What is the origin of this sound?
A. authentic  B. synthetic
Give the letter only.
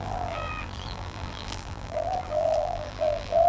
B